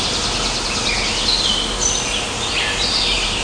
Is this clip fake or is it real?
real